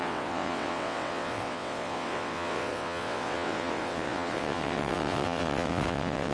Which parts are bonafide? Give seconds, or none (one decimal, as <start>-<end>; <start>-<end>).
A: none